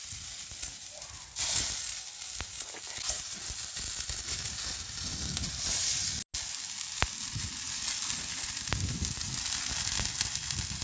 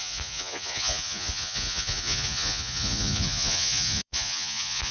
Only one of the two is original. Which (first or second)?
first